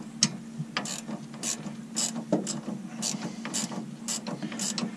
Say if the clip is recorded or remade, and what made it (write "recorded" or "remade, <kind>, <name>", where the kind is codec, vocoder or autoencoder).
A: recorded